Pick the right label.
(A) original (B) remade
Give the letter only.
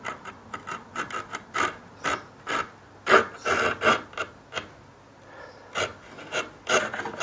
A